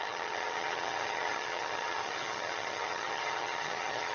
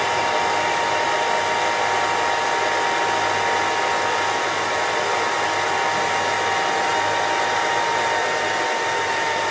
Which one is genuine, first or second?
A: second